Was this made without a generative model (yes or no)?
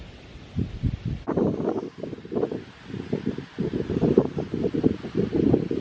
yes